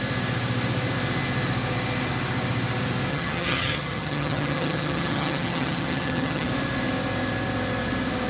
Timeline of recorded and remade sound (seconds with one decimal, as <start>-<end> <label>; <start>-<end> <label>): 0.0-3.1 recorded; 3.1-6.5 remade; 6.5-8.3 recorded